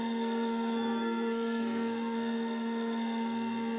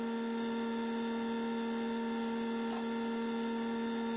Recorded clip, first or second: second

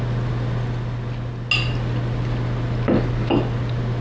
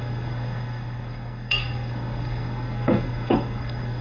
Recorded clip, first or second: first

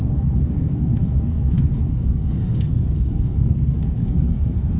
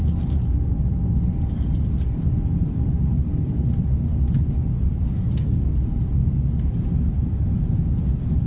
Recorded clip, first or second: second